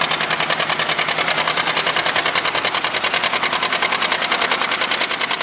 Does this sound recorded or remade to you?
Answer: recorded